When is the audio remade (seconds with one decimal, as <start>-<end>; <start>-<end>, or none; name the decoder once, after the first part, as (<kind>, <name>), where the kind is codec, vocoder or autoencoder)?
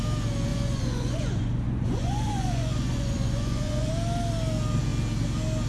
0.5-3.9 (vocoder, Vocos)